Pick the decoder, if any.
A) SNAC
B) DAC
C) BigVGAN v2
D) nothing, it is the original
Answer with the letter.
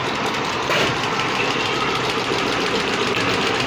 C